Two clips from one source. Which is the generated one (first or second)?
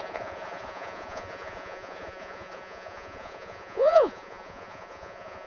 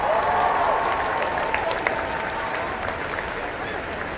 first